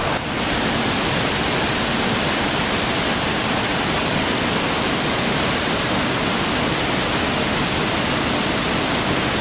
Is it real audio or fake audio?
real